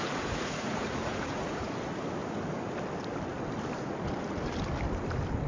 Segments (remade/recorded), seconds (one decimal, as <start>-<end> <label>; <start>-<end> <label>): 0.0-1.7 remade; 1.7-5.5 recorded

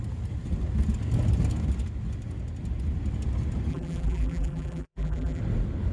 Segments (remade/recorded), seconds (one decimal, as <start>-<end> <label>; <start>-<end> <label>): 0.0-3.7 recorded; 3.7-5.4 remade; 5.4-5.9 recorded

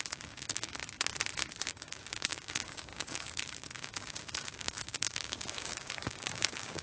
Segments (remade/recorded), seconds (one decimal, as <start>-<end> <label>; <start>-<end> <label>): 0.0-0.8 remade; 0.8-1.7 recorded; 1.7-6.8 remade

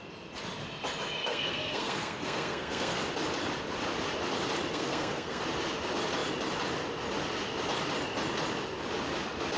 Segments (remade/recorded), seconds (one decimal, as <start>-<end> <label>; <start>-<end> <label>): 0.0-1.3 recorded; 1.3-3.0 remade; 3.0-4.7 recorded; 4.7-5.4 remade; 5.4-9.6 recorded

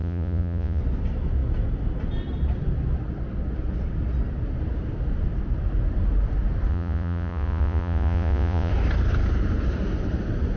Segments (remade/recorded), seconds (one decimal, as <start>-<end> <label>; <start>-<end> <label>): 0.0-0.8 remade; 0.8-6.7 recorded; 6.7-8.7 remade; 8.7-10.6 recorded

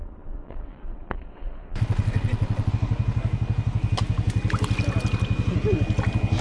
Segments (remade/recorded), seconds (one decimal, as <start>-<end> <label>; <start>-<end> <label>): 0.0-2.7 remade; 2.7-6.4 recorded